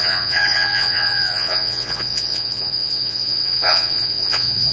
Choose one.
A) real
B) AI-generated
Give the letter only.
B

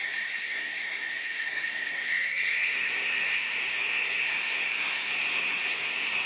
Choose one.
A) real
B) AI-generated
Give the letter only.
B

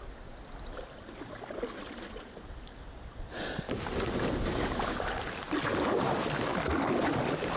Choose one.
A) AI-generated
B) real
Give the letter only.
B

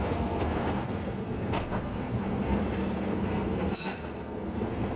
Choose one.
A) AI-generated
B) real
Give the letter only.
A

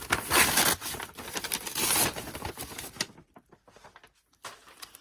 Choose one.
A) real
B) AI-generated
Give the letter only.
A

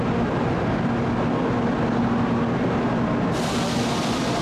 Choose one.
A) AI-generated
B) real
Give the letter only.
B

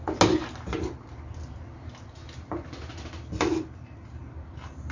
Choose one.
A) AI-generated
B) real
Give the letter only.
B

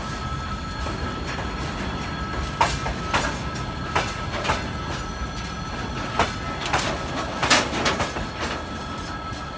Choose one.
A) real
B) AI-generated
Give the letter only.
A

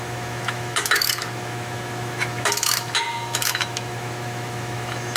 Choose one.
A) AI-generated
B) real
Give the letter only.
A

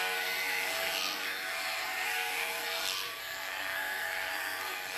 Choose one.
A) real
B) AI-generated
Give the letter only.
B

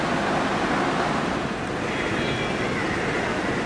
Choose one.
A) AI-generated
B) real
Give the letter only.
B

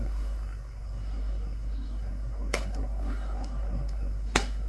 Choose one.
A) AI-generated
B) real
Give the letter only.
A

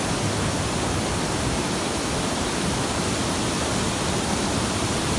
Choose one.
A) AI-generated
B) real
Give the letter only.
B